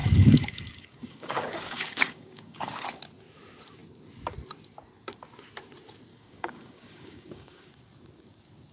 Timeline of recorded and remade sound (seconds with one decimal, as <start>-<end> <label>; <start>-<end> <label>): 0.0-2.8 remade; 2.8-6.1 recorded; 6.1-7.7 remade; 7.7-8.7 recorded